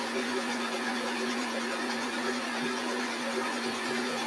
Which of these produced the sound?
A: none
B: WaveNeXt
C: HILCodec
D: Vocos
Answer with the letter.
D